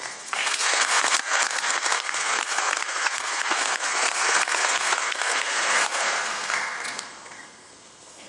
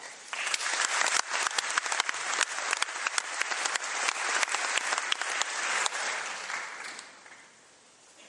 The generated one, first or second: first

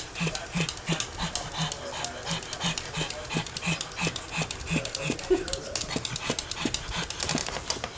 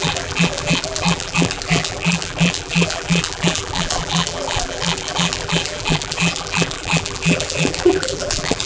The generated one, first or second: second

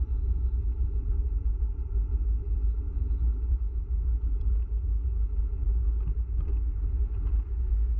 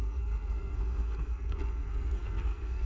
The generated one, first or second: second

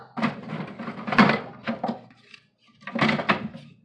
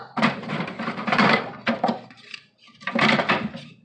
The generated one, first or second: second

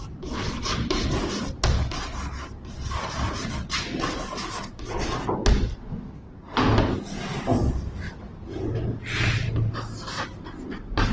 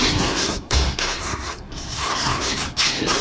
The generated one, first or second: second